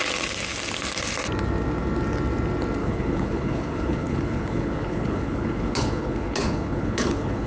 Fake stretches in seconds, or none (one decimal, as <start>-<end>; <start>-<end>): 2.8-7.5